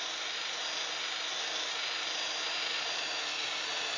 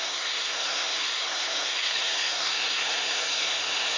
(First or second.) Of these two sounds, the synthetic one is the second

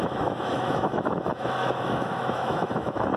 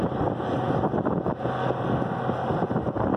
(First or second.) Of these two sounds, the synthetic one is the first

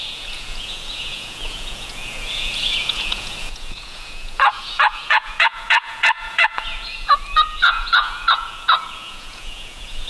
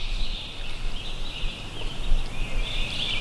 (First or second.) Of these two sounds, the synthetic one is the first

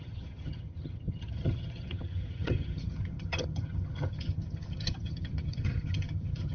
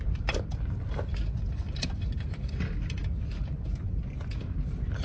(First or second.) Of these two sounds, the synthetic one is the first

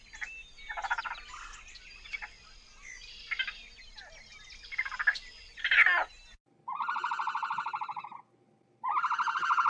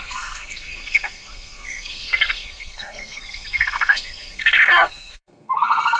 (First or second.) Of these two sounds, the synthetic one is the second